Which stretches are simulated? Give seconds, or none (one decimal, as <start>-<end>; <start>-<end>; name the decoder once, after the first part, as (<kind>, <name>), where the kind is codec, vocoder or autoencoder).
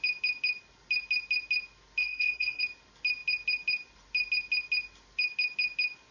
2.0-2.6 (codec, SNAC)